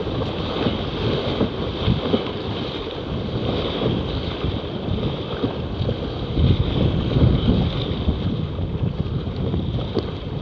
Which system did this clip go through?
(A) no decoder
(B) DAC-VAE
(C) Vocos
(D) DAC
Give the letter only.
A